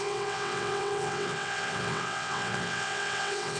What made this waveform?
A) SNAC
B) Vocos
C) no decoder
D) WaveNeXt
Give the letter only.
D